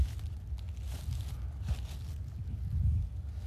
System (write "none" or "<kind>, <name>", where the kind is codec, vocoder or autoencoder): none